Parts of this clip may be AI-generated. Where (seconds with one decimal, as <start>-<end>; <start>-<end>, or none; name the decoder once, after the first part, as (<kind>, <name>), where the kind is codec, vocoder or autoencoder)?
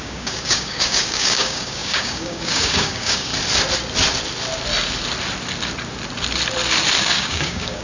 0.0-3.3 (codec, DAC); 7.0-7.8